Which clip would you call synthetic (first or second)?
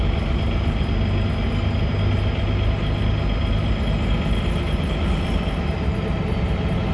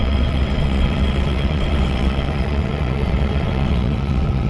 second